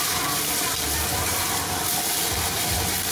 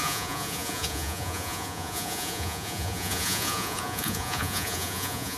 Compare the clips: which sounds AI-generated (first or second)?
second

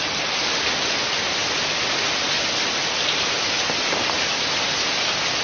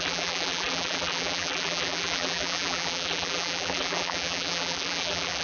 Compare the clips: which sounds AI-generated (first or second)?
second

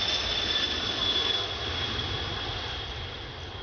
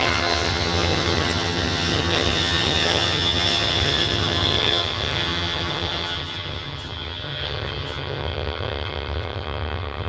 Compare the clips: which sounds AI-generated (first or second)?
second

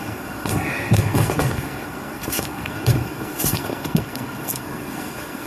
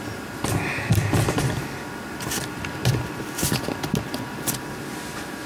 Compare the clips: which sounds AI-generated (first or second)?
first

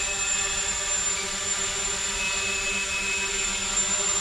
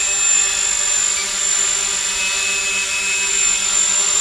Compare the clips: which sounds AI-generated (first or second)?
first